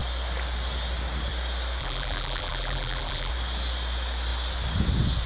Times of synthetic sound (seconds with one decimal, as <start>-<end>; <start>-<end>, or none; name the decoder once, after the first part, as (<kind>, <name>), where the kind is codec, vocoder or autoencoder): 1.8-3.3 (vocoder, BigVGAN v2)